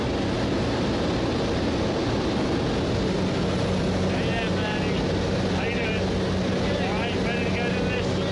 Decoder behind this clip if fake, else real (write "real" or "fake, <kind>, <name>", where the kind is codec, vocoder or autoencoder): real